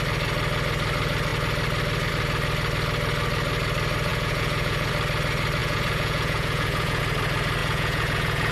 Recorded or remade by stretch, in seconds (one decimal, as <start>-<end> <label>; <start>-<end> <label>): 0.0-4.1 recorded; 4.1-4.9 remade; 4.9-5.6 recorded; 5.6-7.0 remade; 7.0-7.6 recorded; 7.6-8.5 remade